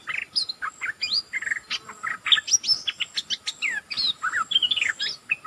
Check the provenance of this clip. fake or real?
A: real